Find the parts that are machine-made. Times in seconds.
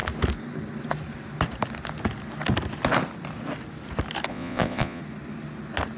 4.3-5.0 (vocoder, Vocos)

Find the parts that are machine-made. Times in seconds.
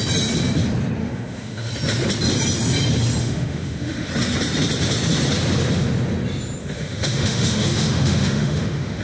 1.0-1.7 (autoencoder, DAC-VAE); 3.2-4.1; 6.6-9.0